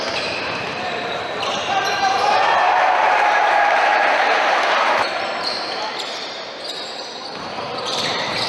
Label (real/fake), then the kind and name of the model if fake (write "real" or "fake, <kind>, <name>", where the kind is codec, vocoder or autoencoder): fake, vocoder, BigVGAN v2